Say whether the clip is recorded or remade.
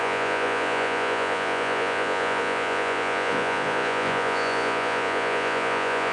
remade